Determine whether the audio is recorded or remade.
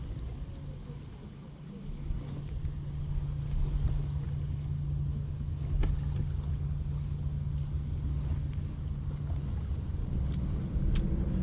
recorded